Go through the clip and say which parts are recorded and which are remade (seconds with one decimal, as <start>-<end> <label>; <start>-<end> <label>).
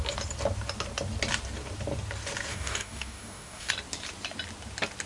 0.0-2.5 recorded; 2.5-3.7 remade; 3.7-5.1 recorded